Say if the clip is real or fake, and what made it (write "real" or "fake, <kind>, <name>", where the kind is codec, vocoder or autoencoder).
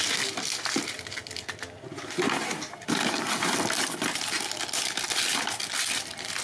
real